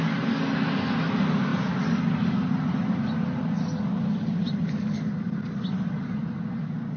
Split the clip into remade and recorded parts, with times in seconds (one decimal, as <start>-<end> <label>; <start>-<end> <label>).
0.0-7.0 recorded